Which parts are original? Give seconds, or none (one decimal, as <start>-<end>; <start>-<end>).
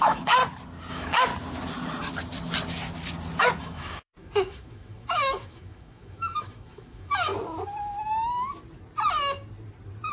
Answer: 0.4-0.9; 1.3-3.6; 7.3-10.1